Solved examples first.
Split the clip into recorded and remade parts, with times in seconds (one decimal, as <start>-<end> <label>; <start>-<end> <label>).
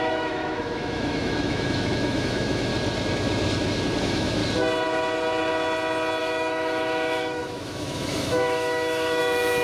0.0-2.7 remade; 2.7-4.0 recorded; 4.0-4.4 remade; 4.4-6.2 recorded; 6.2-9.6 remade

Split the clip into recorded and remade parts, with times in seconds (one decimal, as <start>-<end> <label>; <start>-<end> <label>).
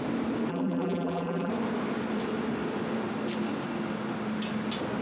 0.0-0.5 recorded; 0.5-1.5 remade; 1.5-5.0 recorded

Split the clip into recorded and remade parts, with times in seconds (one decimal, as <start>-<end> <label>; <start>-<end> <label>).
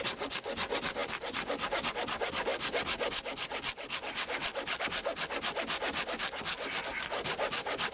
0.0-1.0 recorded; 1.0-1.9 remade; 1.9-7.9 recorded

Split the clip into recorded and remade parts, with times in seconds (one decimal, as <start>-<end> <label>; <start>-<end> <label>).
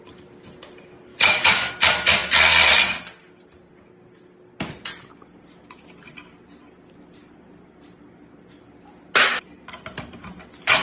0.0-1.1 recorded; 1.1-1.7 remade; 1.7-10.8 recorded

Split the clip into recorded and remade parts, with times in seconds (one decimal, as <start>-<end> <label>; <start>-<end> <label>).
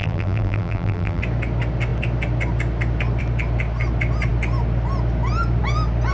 0.0-1.2 remade; 1.2-6.1 recorded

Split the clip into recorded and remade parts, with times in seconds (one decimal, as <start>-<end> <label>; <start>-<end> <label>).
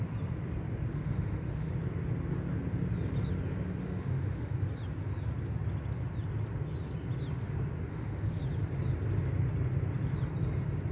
0.0-0.9 recorded; 0.9-1.7 remade; 1.7-3.8 recorded; 3.8-4.5 remade; 4.5-7.9 recorded; 7.9-8.4 remade; 8.4-10.9 recorded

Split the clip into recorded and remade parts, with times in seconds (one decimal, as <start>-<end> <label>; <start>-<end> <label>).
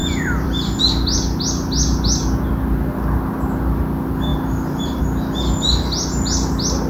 0.0-0.8 remade; 0.8-4.3 recorded; 4.3-5.0 remade; 5.0-6.9 recorded